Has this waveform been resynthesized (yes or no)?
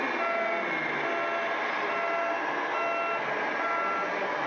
no